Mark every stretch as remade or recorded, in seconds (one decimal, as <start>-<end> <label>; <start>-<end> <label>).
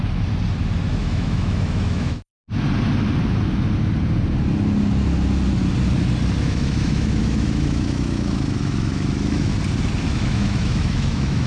0.0-1.0 recorded; 1.0-2.3 remade; 2.3-6.4 recorded; 6.4-9.5 remade; 9.5-10.1 recorded; 10.1-11.5 remade